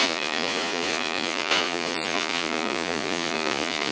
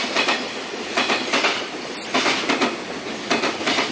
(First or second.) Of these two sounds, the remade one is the first